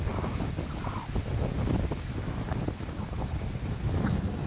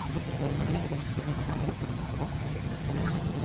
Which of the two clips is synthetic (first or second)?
second